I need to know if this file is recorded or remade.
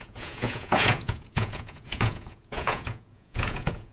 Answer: remade